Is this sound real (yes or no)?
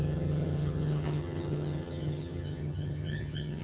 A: no